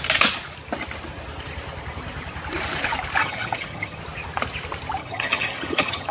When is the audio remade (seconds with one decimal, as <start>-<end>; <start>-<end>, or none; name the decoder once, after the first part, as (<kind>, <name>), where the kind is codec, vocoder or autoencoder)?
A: 3.2-4.0 (vocoder, HiFi-GAN); 5.0-6.1